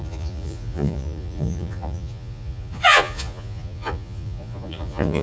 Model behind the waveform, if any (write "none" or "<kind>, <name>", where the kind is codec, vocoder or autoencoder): vocoder, Vocos